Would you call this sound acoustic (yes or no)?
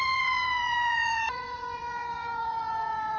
no